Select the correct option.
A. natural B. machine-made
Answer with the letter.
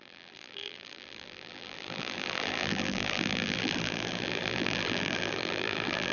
B